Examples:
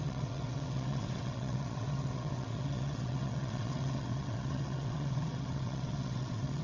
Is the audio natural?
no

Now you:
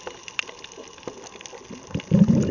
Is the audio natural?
yes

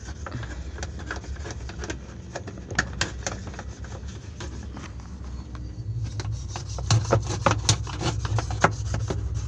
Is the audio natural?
yes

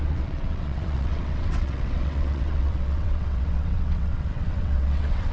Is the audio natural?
no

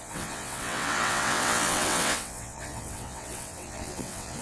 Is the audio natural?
no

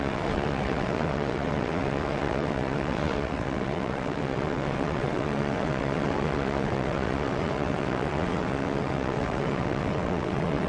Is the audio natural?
no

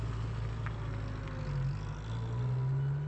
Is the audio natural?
yes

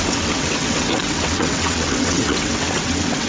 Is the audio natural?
no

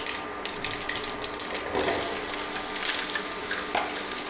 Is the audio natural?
yes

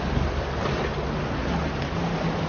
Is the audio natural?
yes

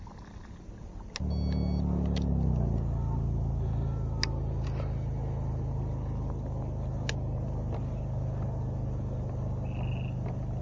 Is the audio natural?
yes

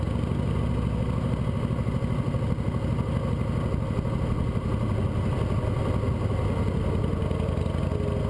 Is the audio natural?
yes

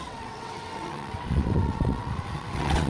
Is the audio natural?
no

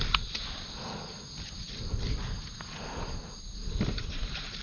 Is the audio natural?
yes